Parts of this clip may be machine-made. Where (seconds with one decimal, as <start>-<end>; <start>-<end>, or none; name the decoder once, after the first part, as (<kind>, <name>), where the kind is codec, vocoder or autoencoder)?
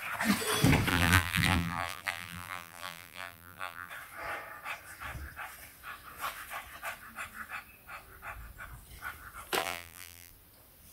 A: 0.9-3.9 (vocoder, BigVGAN v2); 9.6-10.3